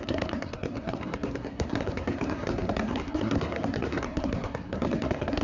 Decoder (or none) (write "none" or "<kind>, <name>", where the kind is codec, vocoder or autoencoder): codec, SNAC